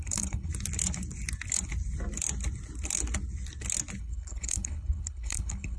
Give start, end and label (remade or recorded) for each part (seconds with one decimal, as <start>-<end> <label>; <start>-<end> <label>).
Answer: 0.0-0.5 remade; 0.5-4.0 recorded; 4.0-5.8 remade